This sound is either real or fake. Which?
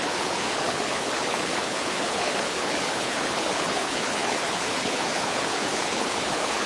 fake